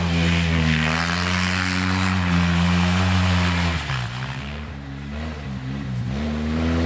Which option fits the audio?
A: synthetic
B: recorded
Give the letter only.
B